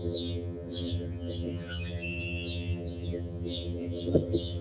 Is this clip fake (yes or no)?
yes